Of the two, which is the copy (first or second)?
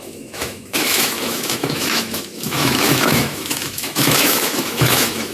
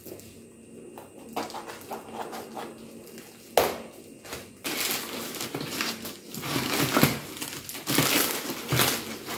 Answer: first